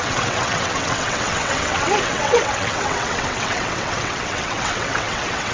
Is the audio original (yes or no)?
no